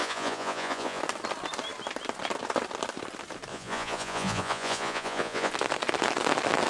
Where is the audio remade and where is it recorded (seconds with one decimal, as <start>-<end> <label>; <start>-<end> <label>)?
0.0-1.0 remade; 1.0-3.5 recorded; 3.5-5.5 remade; 5.5-6.7 recorded